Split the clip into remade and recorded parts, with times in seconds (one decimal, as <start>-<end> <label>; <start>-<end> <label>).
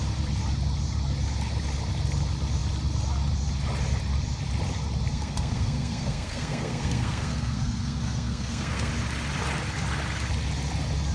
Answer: 0.0-5.1 recorded; 5.1-8.9 remade; 8.9-11.1 recorded